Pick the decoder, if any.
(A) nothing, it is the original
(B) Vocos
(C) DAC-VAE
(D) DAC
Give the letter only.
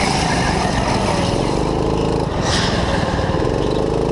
A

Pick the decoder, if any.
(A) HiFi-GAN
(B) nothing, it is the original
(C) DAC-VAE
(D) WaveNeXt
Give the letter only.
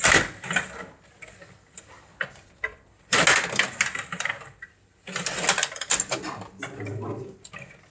B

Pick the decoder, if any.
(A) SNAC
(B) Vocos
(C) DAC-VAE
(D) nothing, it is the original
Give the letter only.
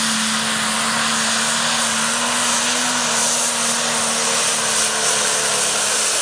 D